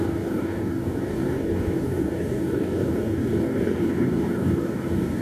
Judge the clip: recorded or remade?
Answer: remade